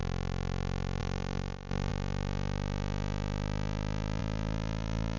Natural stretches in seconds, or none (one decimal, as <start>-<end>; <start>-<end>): 0.0-1.0; 1.9-4.2